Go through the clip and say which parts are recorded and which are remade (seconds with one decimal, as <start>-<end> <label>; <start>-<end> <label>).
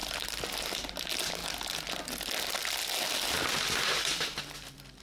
0.0-5.0 recorded